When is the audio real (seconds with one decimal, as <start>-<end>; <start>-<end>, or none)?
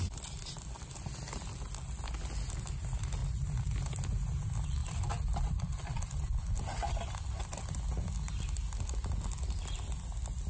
0.0-10.5